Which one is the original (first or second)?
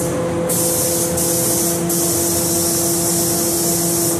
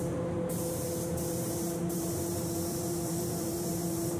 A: first